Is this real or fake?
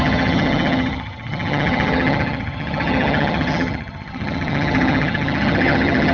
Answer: fake